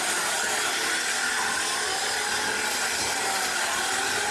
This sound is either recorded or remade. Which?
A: recorded